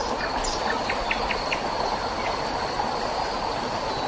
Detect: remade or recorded recorded